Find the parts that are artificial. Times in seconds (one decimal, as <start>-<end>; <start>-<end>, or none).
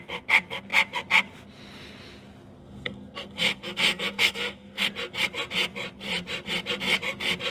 2.6-4.9